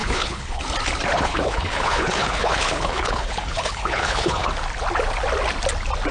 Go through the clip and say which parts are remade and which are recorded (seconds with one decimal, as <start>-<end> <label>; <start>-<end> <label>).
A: 0.0-0.6 remade; 0.6-1.1 recorded; 1.1-4.5 remade; 4.5-6.1 recorded